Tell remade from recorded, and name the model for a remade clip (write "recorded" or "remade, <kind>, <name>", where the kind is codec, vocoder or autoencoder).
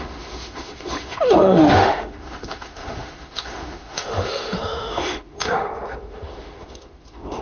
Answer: remade, autoencoder, DAC-VAE